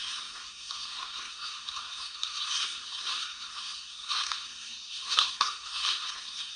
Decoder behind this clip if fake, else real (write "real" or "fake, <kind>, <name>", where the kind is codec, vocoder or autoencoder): fake, codec, SNAC